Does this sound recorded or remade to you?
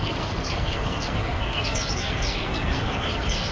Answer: remade